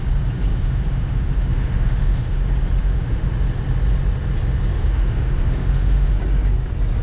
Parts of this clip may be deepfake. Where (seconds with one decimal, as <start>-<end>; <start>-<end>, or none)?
0.5-2.4; 2.8-3.3; 4.7-6.1